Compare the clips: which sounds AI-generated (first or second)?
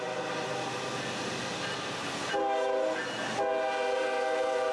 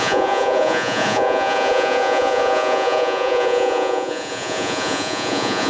second